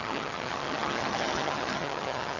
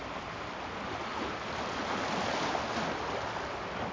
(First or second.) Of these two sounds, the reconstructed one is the first